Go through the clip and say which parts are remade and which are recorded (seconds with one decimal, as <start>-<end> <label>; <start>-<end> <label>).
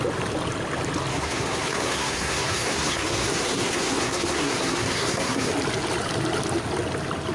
0.0-1.1 recorded; 1.1-5.5 remade; 5.5-7.3 recorded